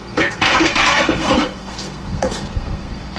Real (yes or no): no